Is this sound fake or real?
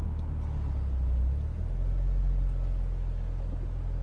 real